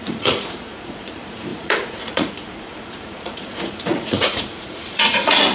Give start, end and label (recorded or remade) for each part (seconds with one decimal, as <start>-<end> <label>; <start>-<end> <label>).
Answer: 0.0-5.5 remade